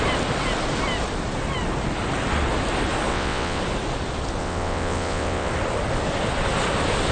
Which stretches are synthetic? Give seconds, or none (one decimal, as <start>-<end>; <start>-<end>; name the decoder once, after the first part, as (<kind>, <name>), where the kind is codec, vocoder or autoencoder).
3.1-3.6 (vocoder, WaveNeXt); 4.4-5.5